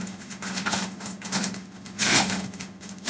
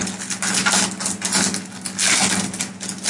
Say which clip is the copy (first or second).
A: first